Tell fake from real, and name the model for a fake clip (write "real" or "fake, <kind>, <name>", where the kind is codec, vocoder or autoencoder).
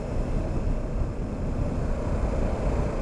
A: real